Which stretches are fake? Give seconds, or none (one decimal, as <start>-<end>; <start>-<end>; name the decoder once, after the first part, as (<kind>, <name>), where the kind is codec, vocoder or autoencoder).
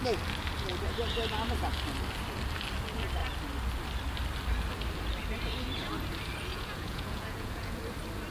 6.5-7.8 (vocoder, Vocos)